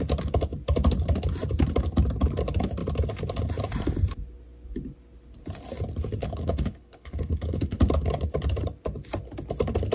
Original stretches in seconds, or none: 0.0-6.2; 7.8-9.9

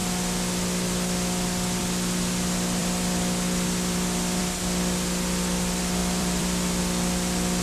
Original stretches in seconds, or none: 0.0-2.8; 4.4-6.0; 6.8-7.6

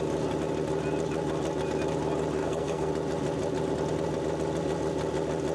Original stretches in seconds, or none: 0.0-2.4; 2.9-5.5

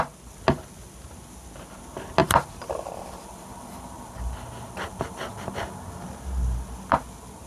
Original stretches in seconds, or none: 0.0-2.2; 5.9-7.5

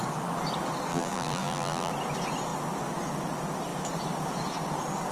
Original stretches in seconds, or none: 0.0-0.9; 1.9-5.1

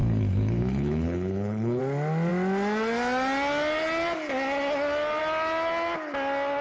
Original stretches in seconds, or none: 1.8-6.6

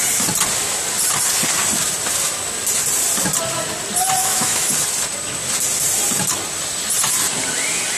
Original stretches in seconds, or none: 0.0-4.2; 4.7-8.0